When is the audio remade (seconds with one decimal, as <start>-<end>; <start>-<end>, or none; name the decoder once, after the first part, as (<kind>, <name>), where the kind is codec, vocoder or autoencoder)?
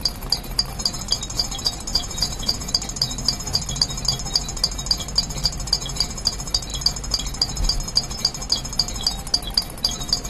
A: 1.9-2.7 (vocoder, Vocos)